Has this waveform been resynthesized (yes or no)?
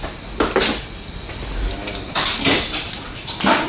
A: no